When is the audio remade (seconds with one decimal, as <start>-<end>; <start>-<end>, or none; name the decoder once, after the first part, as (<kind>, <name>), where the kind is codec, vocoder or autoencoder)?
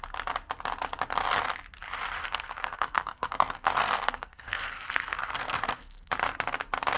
2.2-6.1 (codec, SNAC)